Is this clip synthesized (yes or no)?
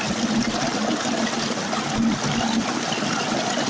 no